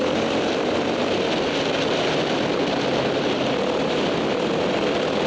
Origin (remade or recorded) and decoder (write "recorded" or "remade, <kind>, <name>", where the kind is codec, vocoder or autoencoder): recorded